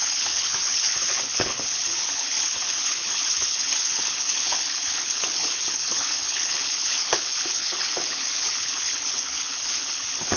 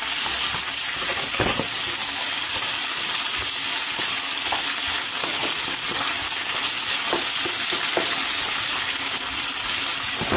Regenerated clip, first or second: first